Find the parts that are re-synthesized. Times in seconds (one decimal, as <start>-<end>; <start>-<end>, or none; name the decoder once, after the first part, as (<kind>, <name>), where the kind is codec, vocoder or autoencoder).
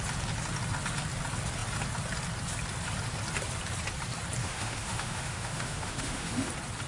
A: 4.4-6.5 (autoencoder, DAC-VAE)